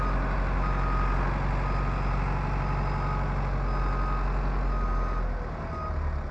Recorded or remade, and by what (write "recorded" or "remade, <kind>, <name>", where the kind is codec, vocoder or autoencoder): recorded